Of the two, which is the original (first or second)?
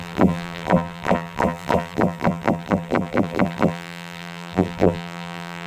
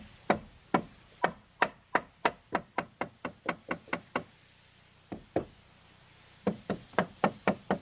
second